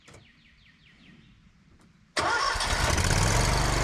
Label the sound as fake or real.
fake